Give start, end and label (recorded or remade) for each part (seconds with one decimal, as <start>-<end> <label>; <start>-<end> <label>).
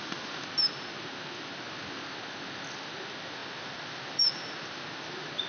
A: 0.0-3.4 recorded; 3.4-5.0 remade; 5.0-5.5 recorded